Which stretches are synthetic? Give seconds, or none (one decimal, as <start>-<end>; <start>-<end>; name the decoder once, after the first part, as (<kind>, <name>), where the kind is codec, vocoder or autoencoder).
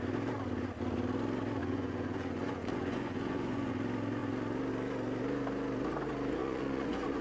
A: 1.6-3.7 (vocoder, Vocos); 6.4-7.2